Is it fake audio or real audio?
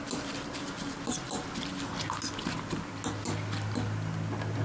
real